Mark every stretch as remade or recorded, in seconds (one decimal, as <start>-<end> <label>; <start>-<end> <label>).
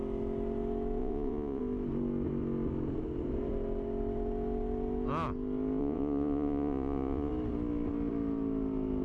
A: 0.0-1.0 recorded; 1.0-1.6 remade; 1.6-5.8 recorded; 5.8-7.3 remade; 7.3-9.0 recorded